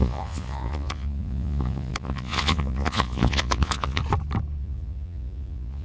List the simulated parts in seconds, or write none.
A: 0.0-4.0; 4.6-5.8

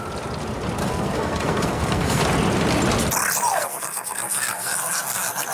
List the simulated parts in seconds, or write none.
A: 0.8-2.2; 3.5-5.5

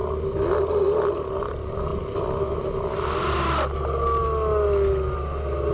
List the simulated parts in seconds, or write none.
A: none

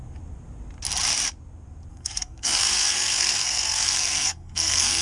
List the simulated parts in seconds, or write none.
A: 1.9-5.0

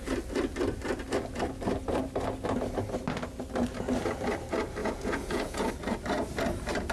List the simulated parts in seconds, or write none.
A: 4.8-5.7